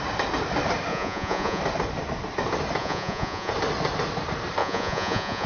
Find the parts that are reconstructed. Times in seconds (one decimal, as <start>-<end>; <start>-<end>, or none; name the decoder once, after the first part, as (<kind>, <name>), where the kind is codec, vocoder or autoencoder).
0.9-1.6 (vocoder, Vocos); 2.8-3.5; 4.6-5.5